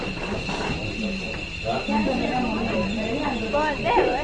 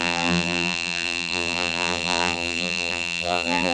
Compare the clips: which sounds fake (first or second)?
second